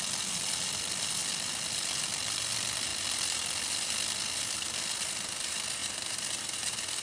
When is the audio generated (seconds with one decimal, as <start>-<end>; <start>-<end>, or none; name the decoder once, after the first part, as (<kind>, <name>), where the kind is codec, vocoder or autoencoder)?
none